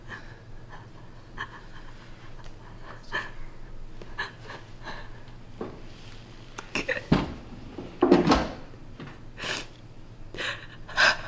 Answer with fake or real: real